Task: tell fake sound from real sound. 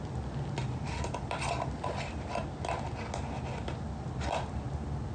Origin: real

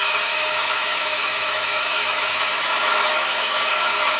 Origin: fake